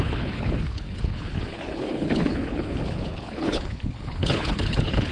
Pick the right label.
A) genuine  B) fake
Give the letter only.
B